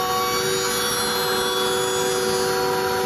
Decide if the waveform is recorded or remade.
recorded